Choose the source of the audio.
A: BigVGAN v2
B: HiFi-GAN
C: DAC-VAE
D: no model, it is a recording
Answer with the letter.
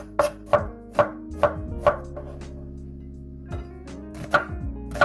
D